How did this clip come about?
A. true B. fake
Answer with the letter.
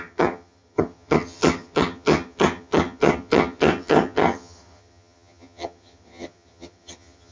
B